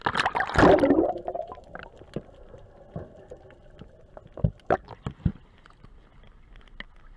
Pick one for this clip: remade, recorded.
recorded